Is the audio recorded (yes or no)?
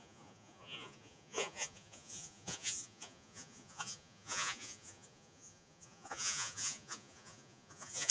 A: no